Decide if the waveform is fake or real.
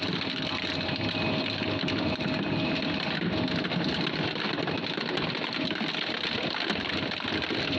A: real